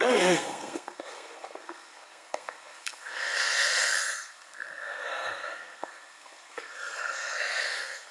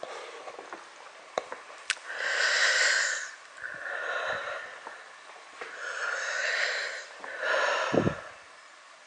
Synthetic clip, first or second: first